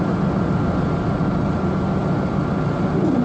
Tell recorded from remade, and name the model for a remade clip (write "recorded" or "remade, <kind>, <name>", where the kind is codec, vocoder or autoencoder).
recorded